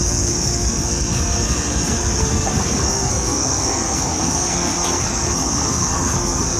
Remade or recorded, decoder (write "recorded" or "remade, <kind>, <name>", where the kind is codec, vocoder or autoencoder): remade, codec, SNAC